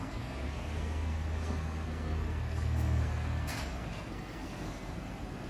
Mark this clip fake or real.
fake